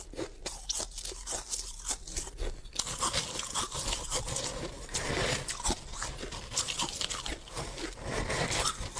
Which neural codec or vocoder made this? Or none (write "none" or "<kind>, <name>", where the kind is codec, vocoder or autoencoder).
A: none